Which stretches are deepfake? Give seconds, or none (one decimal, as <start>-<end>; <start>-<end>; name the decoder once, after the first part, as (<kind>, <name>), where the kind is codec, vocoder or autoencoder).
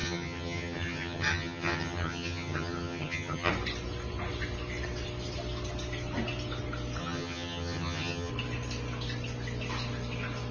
0.0-3.5 (vocoder, HiFi-GAN); 7.0-8.3